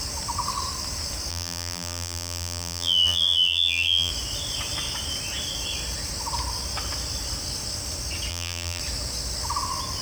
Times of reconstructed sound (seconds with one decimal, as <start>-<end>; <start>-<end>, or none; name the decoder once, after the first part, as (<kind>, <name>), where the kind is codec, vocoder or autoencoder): 1.3-4.1 (vocoder, BigVGAN v2); 8.3-8.8